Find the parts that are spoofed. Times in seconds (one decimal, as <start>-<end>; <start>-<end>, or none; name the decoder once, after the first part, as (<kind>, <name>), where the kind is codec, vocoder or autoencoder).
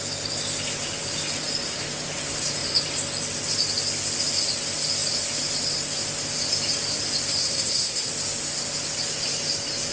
7.4-8.1 (codec, SNAC)